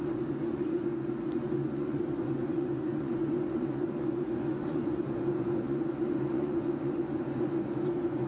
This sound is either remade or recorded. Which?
remade